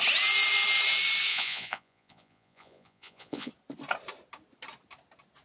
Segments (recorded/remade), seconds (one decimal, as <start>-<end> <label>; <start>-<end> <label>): 0.0-1.3 recorded; 1.3-3.5 remade; 3.5-5.4 recorded